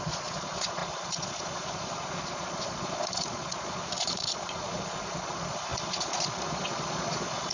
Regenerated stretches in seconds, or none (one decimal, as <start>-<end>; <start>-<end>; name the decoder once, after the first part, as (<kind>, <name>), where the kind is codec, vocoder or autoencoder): 0.0-7.5 (vocoder, Vocos)